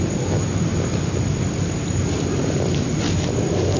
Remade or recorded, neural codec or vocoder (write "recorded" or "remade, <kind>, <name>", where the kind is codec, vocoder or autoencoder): recorded